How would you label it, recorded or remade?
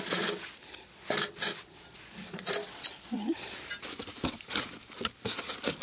recorded